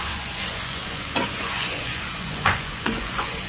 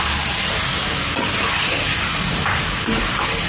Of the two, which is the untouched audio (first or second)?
second